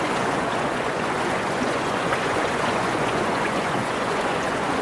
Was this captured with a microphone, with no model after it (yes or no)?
no